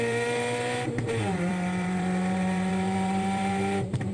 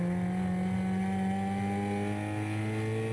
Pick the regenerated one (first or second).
first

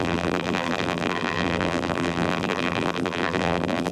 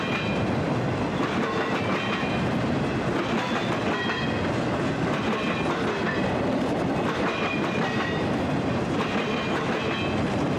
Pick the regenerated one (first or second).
first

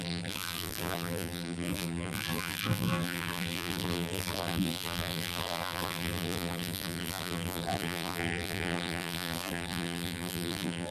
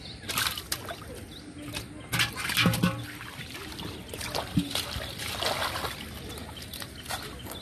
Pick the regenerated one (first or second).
first